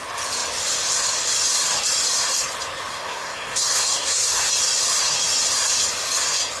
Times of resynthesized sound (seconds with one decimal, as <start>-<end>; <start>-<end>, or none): 2.9-4.5

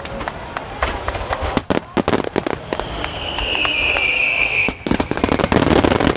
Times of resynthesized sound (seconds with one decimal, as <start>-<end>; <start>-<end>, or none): 3.1-3.6; 4.3-5.2